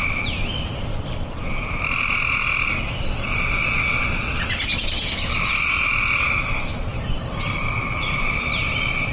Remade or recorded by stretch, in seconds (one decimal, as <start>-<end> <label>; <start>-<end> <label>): 0.0-6.9 recorded; 6.9-9.1 remade